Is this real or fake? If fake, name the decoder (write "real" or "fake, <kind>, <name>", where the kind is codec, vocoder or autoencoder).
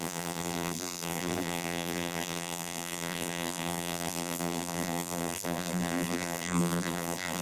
fake, vocoder, BigVGAN v2